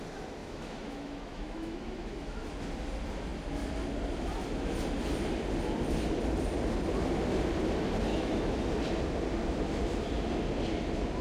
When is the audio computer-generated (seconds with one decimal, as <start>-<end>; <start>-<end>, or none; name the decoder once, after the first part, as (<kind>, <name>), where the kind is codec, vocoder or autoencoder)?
0.4-2.5 (autoencoder, DAC-VAE); 8.1-8.6